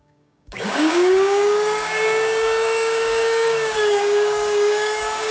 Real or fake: fake